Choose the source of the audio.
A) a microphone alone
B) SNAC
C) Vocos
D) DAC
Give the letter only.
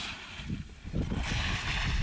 A